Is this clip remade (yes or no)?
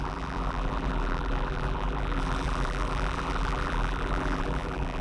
yes